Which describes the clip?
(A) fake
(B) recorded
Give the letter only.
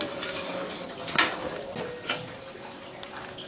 B